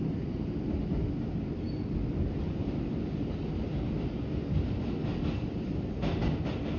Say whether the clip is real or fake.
real